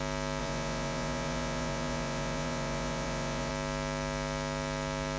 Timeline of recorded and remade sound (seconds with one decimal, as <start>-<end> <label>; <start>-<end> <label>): 0.0-0.4 recorded; 0.4-3.5 remade; 3.5-5.2 recorded